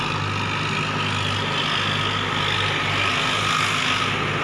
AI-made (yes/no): no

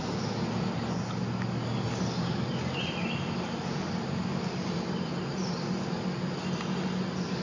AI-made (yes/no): no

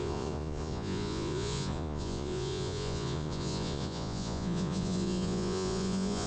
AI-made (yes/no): yes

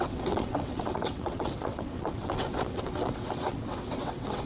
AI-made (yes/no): yes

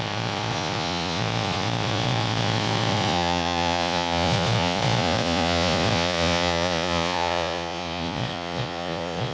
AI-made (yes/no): yes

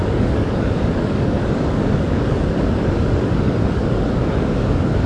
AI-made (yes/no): yes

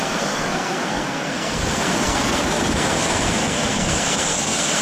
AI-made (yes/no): yes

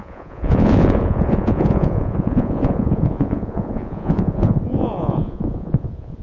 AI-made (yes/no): yes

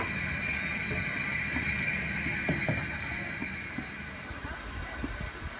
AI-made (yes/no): no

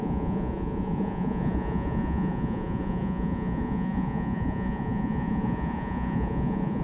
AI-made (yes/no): yes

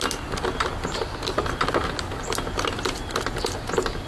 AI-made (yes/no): no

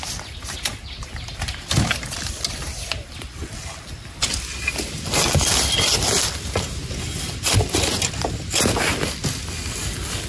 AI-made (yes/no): no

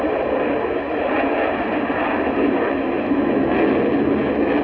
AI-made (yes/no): no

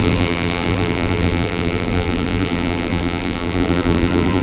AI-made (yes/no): yes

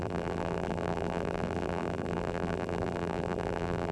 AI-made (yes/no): yes